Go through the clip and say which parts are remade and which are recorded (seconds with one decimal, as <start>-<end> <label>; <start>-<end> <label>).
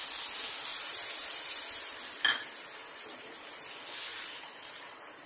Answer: 0.0-0.7 recorded; 0.7-2.0 remade; 2.0-2.8 recorded; 2.8-3.6 remade; 3.6-4.1 recorded; 4.1-5.3 remade